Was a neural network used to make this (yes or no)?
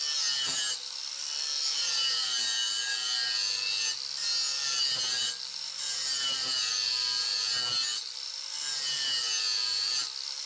no